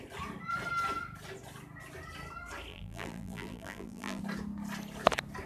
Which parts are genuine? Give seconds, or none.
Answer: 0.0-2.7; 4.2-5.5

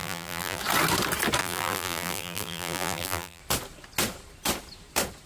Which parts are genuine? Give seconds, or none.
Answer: 0.6-1.4; 3.4-5.3

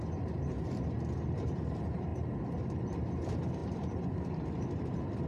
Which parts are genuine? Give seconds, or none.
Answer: 0.5-1.0

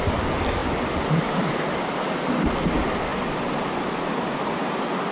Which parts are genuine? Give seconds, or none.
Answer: 0.0-0.6; 2.1-5.1